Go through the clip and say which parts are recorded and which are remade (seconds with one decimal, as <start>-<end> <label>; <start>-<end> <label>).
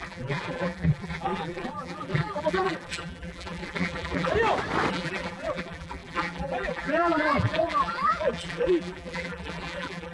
0.0-4.3 remade; 4.3-4.9 recorded; 4.9-10.1 remade